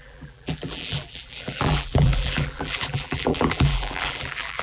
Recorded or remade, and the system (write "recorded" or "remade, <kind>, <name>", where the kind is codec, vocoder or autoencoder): remade, vocoder, BigVGAN v2